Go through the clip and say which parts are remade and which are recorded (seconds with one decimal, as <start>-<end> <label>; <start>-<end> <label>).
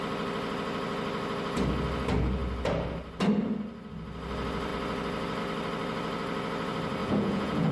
0.0-7.0 recorded; 7.0-7.7 remade